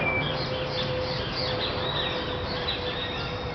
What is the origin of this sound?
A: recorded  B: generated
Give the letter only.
A